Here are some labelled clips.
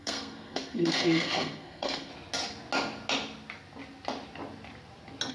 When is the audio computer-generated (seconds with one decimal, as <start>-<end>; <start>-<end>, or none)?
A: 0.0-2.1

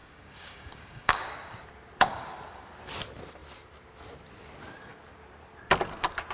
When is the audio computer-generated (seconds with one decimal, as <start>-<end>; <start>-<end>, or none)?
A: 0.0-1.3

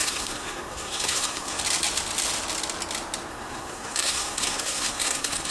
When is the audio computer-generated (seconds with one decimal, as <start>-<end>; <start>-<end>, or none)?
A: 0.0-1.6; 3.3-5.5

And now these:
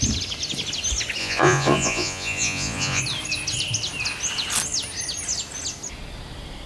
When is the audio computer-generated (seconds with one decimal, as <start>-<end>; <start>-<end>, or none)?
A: 1.2-3.0